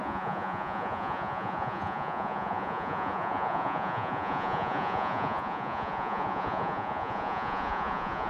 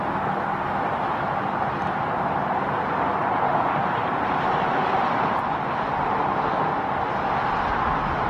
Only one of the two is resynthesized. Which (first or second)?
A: first